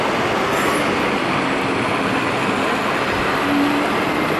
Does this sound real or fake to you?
real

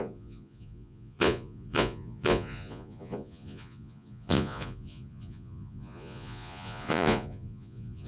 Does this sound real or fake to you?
fake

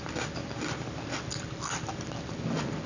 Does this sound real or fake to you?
fake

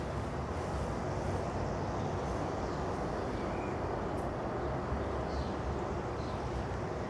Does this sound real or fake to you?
real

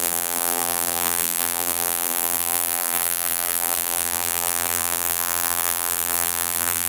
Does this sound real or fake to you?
fake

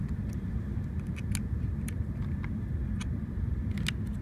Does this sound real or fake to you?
real